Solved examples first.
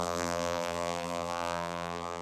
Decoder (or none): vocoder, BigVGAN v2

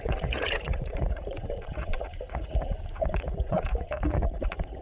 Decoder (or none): vocoder, Vocos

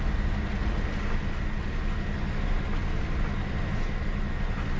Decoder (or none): none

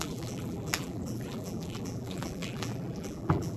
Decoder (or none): vocoder, BigVGAN v2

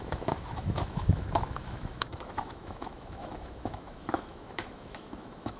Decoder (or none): autoencoder, DAC-VAE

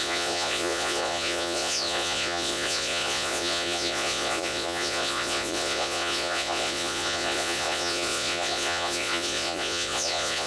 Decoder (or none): vocoder, Vocos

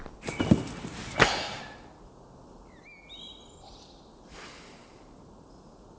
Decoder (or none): none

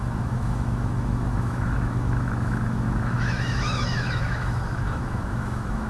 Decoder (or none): autoencoder, DAC-VAE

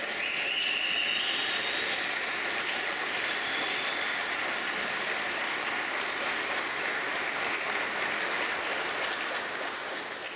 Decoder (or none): none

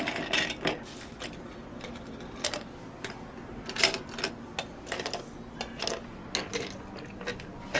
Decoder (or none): none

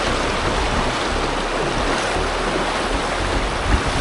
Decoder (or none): none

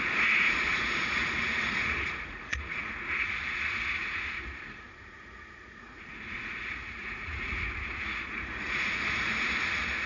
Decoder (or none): vocoder, Vocos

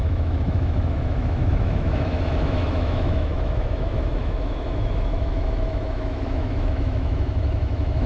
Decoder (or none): autoencoder, DAC-VAE